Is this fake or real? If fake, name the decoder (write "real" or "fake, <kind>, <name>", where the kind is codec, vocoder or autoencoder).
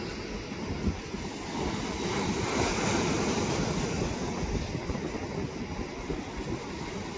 real